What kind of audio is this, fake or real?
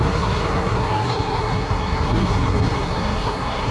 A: fake